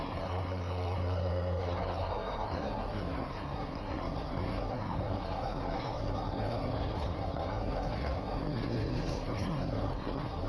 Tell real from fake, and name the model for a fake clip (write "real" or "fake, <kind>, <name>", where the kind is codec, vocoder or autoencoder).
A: fake, codec, SNAC